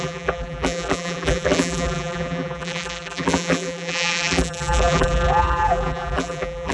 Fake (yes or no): yes